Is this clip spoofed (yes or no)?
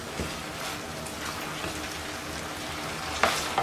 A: no